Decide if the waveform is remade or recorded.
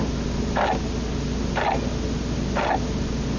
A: recorded